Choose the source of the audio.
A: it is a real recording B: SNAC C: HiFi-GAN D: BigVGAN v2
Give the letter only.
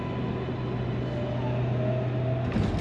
A